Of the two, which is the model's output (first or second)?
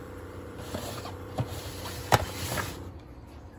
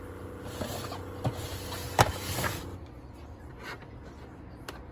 first